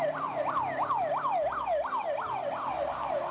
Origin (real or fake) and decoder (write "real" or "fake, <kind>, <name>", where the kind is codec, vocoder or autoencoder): real